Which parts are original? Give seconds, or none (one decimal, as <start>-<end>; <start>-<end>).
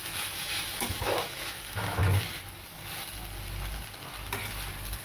2.0-5.0